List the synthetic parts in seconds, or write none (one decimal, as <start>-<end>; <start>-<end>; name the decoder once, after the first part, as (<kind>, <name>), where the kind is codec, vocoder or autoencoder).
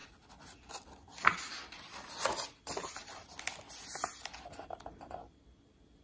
none